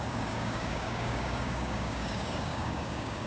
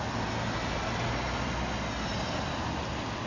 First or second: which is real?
second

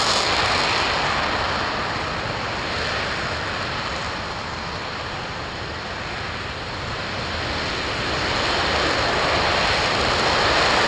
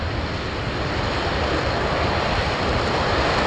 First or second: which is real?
first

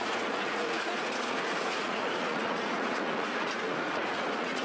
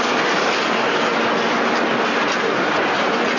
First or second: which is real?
second